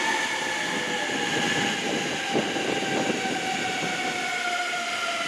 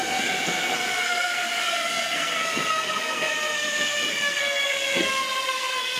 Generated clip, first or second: second